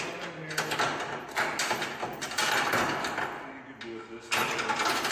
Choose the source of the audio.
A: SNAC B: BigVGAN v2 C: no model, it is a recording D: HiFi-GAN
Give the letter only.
C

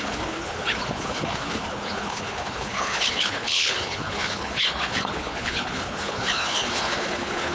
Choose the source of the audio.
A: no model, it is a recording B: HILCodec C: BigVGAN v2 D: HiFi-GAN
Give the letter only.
B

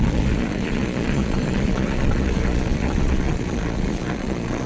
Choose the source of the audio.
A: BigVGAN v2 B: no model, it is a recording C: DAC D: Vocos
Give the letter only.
D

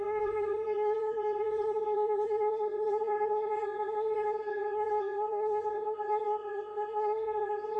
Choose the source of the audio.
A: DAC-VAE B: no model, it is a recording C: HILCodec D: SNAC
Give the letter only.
D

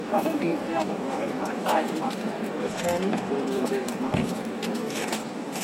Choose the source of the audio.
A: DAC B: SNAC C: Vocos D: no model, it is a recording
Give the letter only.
A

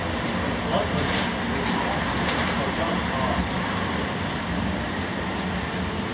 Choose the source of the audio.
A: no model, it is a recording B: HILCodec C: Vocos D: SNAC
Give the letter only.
A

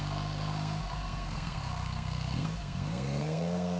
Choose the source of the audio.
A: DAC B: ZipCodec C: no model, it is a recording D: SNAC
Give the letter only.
D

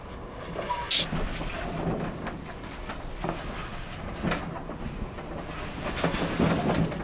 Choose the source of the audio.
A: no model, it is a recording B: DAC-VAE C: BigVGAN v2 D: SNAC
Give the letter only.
A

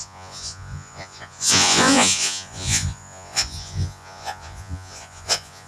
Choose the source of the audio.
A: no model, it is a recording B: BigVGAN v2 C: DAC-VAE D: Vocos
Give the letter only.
D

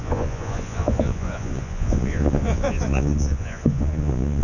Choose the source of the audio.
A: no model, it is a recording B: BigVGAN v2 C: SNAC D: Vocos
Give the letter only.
D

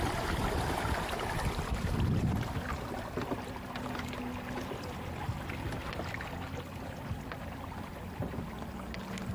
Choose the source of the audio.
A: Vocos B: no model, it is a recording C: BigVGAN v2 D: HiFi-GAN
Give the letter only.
B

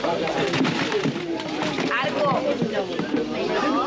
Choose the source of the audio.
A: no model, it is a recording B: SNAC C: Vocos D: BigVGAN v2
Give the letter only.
A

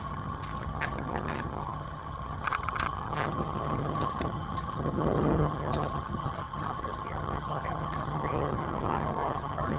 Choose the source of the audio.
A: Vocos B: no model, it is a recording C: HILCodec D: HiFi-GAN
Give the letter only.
D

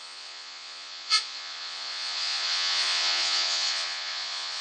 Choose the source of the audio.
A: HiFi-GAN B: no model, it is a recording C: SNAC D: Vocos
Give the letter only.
D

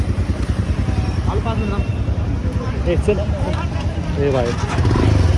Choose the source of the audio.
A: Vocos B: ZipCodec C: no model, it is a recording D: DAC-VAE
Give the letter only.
C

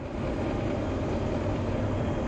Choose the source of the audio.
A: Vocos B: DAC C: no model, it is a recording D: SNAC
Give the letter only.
C